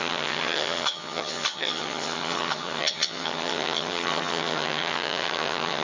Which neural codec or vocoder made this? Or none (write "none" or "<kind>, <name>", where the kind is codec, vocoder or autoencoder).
vocoder, HiFi-GAN